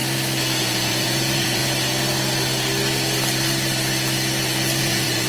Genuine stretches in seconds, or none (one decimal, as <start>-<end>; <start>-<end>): 0.0-0.6; 1.6-4.8